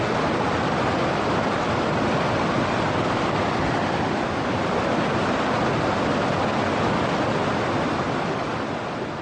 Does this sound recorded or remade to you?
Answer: recorded